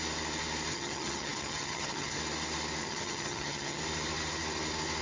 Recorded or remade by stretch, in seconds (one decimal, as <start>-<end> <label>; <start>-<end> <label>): 0.0-0.7 recorded; 0.7-2.2 remade; 2.2-2.8 recorded; 2.8-3.8 remade; 3.8-5.0 recorded